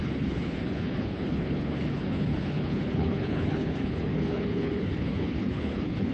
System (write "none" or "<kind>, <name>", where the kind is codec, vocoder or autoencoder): codec, HILCodec